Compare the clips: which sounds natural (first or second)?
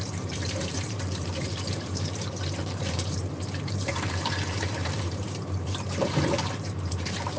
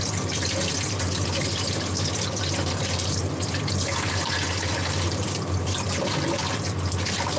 second